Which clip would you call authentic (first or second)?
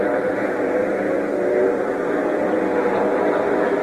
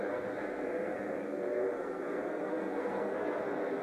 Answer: first